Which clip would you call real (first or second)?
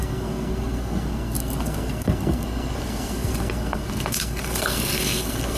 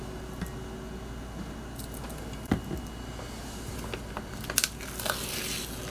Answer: second